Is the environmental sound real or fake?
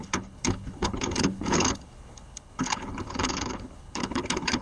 fake